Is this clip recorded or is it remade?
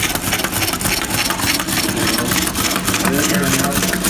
recorded